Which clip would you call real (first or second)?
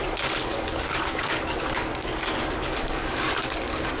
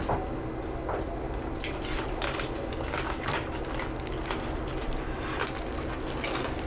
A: second